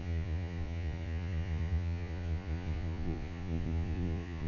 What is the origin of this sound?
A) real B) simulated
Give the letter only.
B